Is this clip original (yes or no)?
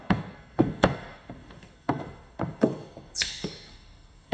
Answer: no